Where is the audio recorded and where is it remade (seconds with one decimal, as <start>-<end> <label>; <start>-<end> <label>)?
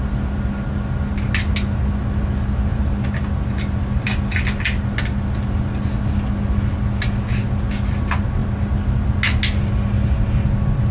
0.0-2.7 recorded; 2.7-4.6 remade; 4.6-8.4 recorded; 8.4-9.0 remade; 9.0-10.9 recorded